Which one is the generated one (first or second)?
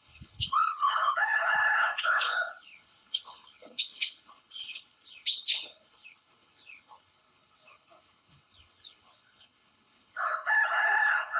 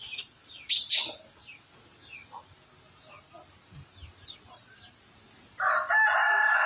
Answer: first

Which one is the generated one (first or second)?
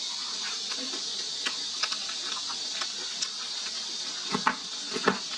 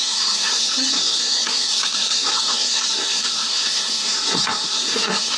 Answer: second